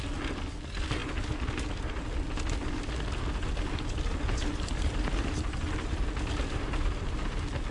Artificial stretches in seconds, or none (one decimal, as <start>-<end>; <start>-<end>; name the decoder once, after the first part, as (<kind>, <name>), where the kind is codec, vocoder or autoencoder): none